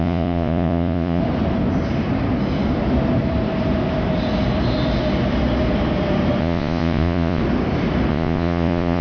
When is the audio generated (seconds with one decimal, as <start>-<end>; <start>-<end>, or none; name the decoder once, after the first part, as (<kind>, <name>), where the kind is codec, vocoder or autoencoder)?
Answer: 0.0-1.2 (vocoder, Vocos); 6.4-7.4; 8.1-9.0